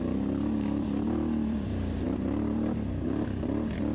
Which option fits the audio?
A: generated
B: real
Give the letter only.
A